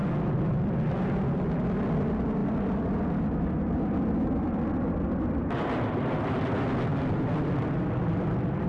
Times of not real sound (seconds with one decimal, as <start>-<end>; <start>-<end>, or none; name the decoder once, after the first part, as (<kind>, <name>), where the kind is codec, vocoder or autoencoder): none